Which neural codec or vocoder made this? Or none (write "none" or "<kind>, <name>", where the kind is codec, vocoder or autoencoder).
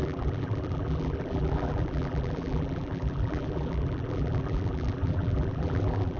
vocoder, BigVGAN v2